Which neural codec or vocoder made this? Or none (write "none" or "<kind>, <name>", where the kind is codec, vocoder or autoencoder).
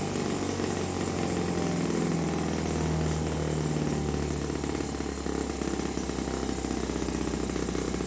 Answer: none